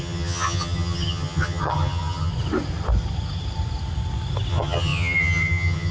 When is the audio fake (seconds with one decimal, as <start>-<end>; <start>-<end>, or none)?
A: 0.0-2.3; 4.5-5.9